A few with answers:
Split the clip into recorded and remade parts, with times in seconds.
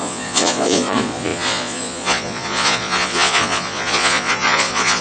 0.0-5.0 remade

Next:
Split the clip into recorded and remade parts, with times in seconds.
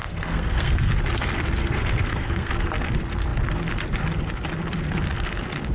0.0-0.9 remade; 0.9-1.6 recorded; 1.6-2.5 remade; 2.5-5.7 recorded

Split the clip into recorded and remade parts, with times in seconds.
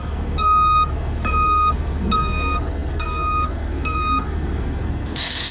0.0-5.5 remade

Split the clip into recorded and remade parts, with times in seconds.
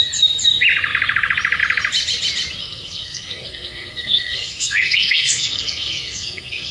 0.0-2.6 recorded; 2.6-6.7 remade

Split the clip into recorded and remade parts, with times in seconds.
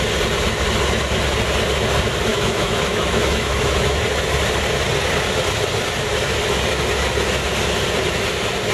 0.0-2.3 recorded; 2.3-4.0 remade; 4.0-8.7 recorded